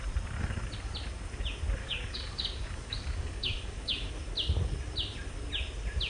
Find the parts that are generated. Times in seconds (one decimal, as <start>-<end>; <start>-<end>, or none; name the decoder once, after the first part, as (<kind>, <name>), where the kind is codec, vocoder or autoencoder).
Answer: 1.8-4.1 (codec, DAC)